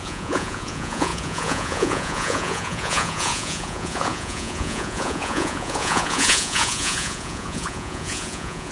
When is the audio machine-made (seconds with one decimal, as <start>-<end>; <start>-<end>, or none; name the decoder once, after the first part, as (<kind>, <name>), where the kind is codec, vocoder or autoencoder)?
0.0-8.7 (vocoder, Vocos)